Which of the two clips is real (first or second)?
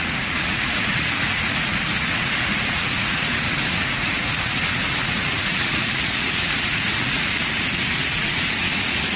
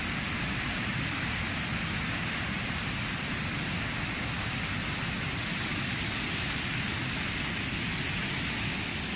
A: second